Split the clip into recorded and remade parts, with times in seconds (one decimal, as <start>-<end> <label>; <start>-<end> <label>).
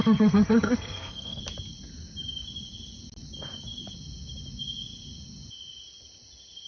0.0-1.4 remade; 1.4-6.7 recorded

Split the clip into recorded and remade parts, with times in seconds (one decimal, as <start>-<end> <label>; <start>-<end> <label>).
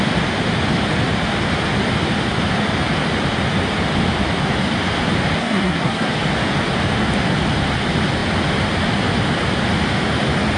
0.0-5.4 recorded; 5.4-6.1 remade; 6.1-10.6 recorded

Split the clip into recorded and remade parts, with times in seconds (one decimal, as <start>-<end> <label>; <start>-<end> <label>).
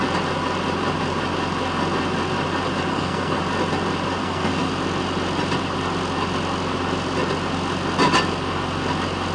0.0-2.9 recorded; 2.9-3.4 remade; 3.4-4.2 recorded; 4.2-4.7 remade; 4.7-9.3 recorded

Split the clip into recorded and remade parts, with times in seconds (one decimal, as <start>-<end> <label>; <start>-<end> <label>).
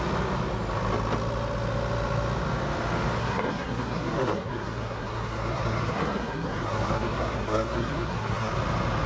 0.0-3.2 recorded; 3.2-8.5 remade; 8.5-9.1 recorded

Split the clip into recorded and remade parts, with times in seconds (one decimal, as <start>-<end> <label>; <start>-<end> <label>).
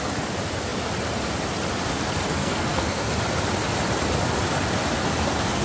0.0-2.4 recorded; 2.4-3.1 remade; 3.1-5.6 recorded